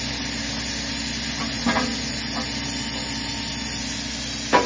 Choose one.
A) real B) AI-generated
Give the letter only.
A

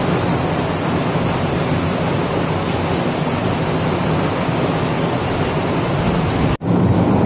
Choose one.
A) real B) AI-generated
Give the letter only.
A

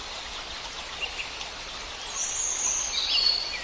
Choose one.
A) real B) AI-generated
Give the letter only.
A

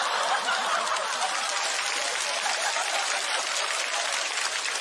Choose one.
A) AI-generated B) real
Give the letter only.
A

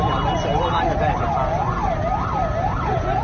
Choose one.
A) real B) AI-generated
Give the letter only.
A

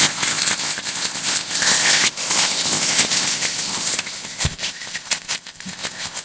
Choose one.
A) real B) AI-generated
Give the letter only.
B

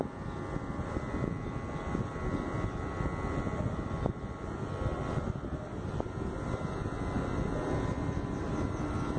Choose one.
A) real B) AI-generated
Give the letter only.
A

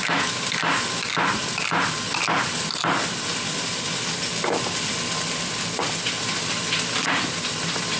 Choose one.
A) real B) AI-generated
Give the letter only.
A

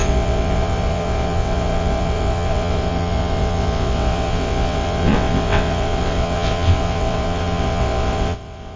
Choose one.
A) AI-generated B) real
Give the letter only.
A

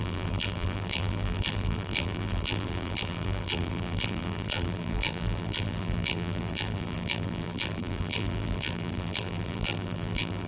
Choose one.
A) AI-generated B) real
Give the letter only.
A